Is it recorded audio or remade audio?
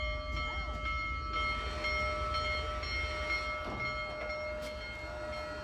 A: recorded